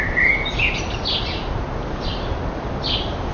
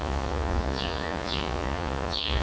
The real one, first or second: first